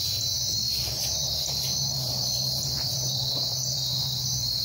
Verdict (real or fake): fake